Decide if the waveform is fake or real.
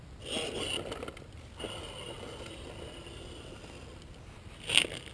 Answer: real